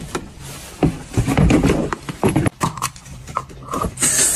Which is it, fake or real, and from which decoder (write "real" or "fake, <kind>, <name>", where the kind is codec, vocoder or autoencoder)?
fake, vocoder, BigVGAN v2